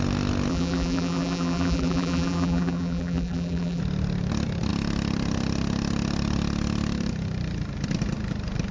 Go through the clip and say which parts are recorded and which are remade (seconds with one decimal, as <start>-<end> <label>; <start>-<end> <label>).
0.0-0.5 recorded; 0.5-3.8 remade; 3.8-8.7 recorded